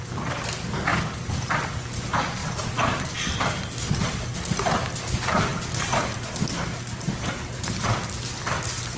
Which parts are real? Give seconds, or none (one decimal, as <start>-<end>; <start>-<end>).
0.0-0.9; 1.8-5.5; 6.0-9.0